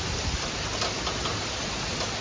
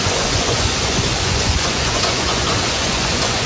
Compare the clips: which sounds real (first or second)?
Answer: first